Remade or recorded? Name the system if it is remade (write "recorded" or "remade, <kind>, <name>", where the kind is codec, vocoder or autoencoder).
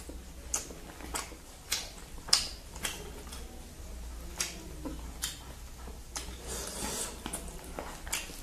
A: recorded